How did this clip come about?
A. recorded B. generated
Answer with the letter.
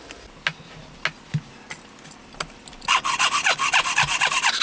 A